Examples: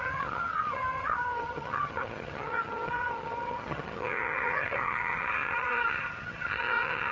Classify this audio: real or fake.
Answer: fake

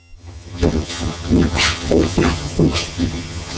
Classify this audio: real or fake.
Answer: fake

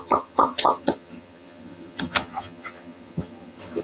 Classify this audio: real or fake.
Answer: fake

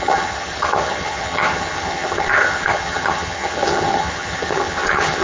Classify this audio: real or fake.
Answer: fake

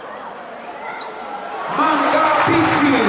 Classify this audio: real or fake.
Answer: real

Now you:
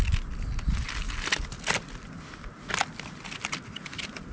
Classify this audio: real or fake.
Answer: real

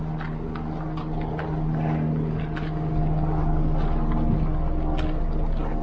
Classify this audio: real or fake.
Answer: real